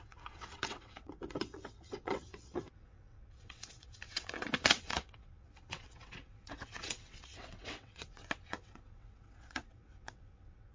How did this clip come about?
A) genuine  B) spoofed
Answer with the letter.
B